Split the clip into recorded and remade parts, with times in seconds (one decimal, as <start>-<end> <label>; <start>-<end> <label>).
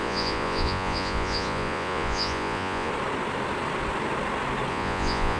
0.0-2.9 remade; 2.9-4.7 recorded; 4.7-5.4 remade